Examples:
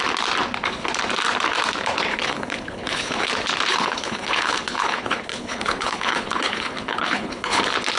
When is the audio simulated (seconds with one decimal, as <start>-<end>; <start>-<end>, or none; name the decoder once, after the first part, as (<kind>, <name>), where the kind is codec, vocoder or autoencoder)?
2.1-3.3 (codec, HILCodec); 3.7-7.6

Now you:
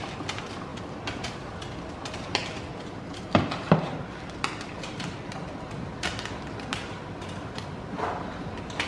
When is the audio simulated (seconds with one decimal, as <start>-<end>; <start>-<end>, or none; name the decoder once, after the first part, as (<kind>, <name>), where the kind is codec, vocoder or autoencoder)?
0.7-1.3 (vocoder, BigVGAN v2); 2.7-5.2

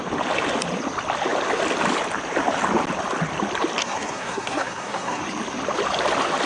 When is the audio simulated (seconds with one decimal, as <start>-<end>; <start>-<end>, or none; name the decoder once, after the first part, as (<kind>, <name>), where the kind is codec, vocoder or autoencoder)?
3.8-5.2 (codec, SNAC)

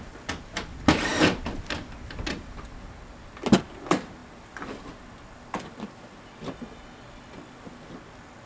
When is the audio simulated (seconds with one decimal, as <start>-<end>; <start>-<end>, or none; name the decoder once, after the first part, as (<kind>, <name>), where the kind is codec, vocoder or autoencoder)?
none

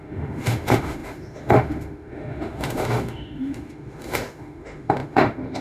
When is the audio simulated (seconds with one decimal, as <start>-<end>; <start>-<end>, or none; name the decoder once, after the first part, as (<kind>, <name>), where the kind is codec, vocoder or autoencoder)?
0.0-5.6 (autoencoder, DAC-VAE)

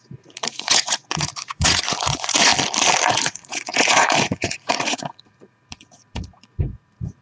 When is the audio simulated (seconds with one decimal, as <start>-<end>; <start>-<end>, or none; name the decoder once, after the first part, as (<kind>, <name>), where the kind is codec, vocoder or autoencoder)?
0.0-2.5 (vocoder, Vocos); 3.1-7.2